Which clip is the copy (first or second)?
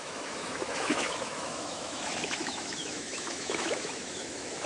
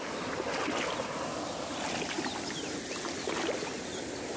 first